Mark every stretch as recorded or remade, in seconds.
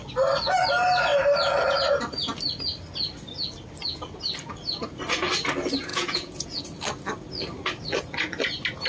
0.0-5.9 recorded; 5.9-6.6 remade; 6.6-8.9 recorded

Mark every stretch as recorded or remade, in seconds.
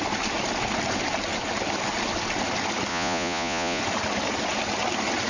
0.0-2.9 recorded; 2.9-3.8 remade; 3.8-5.3 recorded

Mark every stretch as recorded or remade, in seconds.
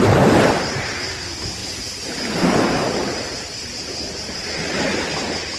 0.0-5.6 recorded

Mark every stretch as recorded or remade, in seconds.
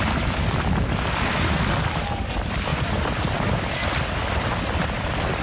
0.0-5.4 recorded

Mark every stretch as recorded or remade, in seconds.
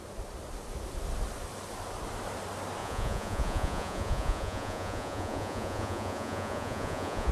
0.0-2.8 recorded; 2.8-7.3 remade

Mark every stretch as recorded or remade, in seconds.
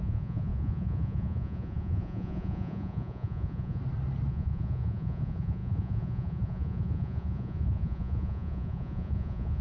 0.0-3.8 remade; 3.8-4.3 recorded; 4.3-9.6 remade